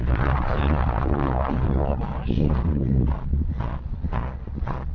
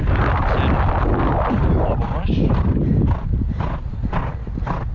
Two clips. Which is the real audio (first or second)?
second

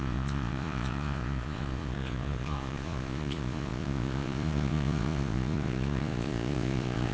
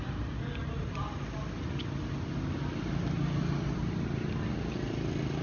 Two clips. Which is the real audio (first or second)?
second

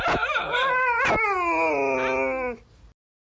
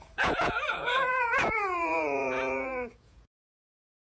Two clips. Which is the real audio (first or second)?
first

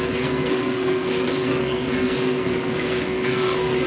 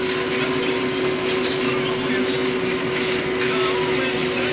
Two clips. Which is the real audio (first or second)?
second